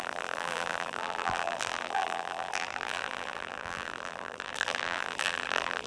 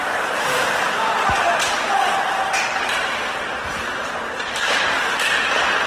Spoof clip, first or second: first